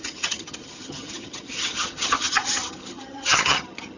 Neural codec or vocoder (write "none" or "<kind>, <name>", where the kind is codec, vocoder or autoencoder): vocoder, HiFi-GAN